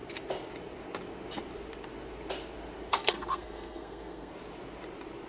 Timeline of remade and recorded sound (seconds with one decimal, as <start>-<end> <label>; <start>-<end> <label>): 0.0-2.9 recorded; 2.9-4.3 remade; 4.3-5.3 recorded